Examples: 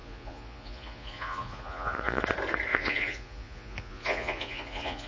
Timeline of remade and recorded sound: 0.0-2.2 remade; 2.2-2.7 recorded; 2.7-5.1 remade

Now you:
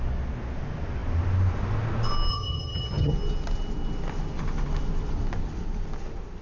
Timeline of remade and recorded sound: 0.0-2.3 recorded; 2.3-3.1 remade; 3.1-6.4 recorded

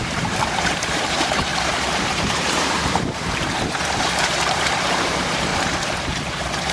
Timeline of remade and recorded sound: 0.0-5.5 remade; 5.5-6.3 recorded; 6.3-6.7 remade

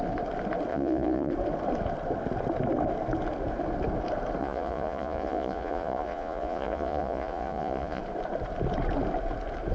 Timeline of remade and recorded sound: 0.0-0.7 recorded; 0.7-1.3 remade; 1.3-4.4 recorded; 4.4-8.0 remade; 8.0-9.7 recorded

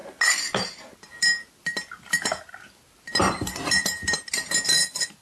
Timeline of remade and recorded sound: 0.0-5.2 recorded

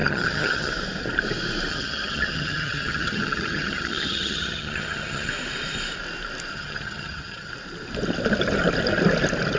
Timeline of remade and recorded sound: 0.0-0.7 remade; 0.7-1.7 recorded; 1.7-5.3 remade; 5.3-6.5 recorded; 6.5-7.5 remade; 7.5-9.6 recorded

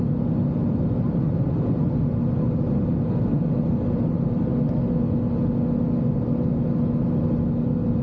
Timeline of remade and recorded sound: 0.0-8.0 recorded

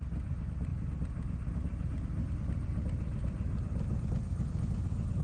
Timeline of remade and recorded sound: 0.0-3.2 recorded; 3.2-4.5 remade; 4.5-5.2 recorded